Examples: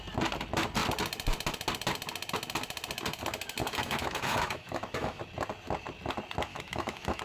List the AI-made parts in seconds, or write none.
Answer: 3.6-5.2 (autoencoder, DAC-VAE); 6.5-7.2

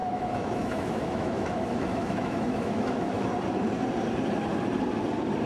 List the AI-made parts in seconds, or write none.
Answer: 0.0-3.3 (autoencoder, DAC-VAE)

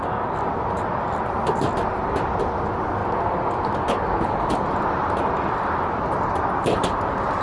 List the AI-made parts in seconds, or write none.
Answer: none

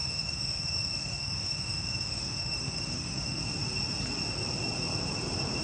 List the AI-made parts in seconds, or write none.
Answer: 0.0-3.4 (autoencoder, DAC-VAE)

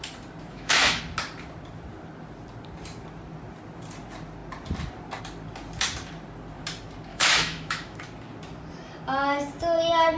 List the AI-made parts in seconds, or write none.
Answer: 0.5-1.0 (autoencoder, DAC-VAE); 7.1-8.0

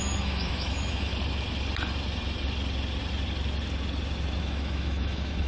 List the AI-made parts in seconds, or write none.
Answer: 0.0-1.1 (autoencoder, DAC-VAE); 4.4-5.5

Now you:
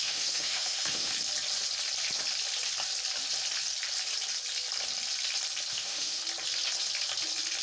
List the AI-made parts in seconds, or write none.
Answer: 0.0-1.1 (autoencoder, DAC-VAE); 5.7-6.2

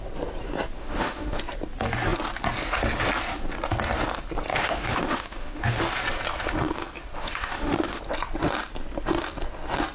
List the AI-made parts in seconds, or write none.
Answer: 0.8-1.4 (autoencoder, DAC-VAE); 4.5-5.8; 7.2-8.0